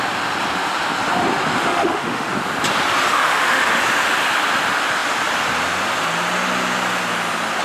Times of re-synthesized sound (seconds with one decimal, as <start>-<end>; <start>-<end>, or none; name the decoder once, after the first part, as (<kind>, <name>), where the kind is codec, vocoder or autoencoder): 1.7-2.3 (autoencoder, DAC-VAE); 3.1-3.8